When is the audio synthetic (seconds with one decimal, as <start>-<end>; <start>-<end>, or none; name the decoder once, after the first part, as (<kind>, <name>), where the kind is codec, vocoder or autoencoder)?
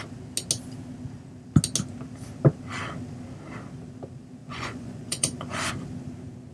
4.4-5.7 (vocoder, Vocos)